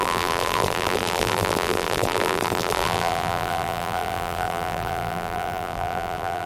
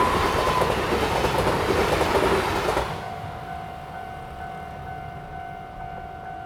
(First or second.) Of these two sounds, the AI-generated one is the first